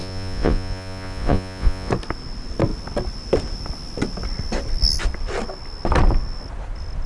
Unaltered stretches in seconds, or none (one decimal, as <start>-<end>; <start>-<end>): 1.9-7.1